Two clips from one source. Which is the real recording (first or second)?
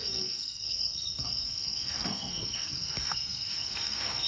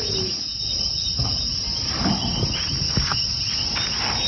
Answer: second